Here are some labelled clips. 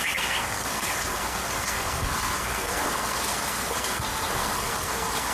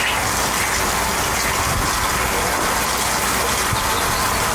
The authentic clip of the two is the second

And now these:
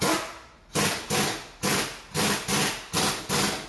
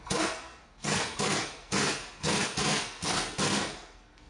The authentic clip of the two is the first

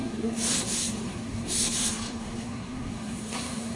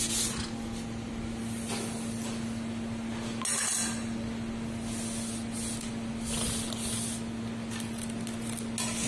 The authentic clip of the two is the second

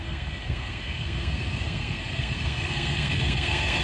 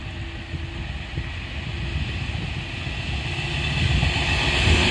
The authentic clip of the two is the second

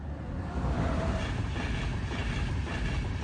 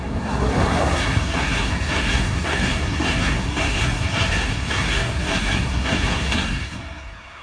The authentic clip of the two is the first